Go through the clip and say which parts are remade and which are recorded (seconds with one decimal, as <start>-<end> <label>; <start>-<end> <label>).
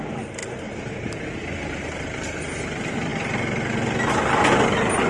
0.0-0.4 recorded; 0.4-2.7 remade; 2.7-5.1 recorded